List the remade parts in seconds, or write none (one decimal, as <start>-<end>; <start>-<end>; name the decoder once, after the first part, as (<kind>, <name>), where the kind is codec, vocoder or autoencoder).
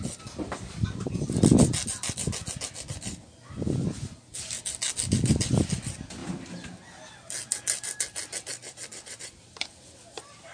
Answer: none